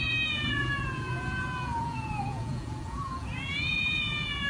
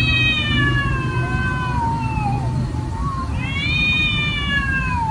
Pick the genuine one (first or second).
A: second